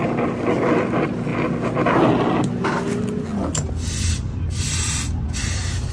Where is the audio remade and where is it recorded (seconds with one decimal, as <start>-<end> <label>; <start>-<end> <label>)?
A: 0.0-5.9 recorded